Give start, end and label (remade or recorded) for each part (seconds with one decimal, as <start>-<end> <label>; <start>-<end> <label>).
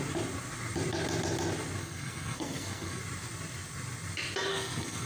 0.0-1.8 recorded; 1.8-3.0 remade; 3.0-4.5 recorded; 4.5-5.1 remade